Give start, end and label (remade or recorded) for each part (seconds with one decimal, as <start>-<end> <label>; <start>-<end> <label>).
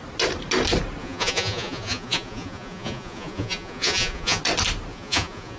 0.0-1.0 recorded; 1.0-4.4 remade; 4.4-4.9 recorded; 4.9-5.6 remade